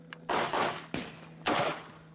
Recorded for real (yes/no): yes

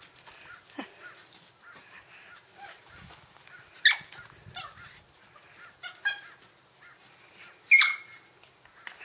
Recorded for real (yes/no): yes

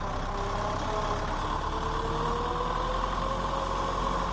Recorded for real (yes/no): yes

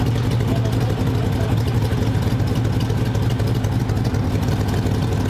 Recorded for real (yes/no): yes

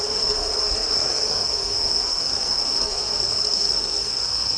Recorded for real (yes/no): no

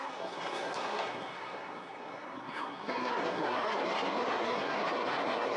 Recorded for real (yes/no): no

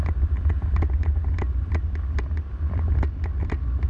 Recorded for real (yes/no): yes